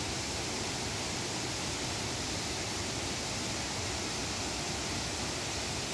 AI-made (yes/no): no